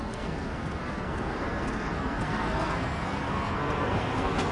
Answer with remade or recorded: remade